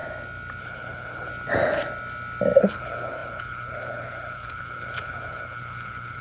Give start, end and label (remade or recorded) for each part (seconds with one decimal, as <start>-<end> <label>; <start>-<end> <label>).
0.0-0.6 recorded; 0.6-1.3 remade; 1.3-2.6 recorded; 2.6-6.2 remade